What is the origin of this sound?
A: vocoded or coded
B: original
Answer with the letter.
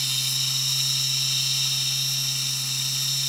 B